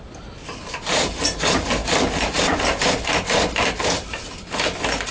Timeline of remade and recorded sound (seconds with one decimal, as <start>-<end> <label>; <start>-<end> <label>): 0.0-5.1 recorded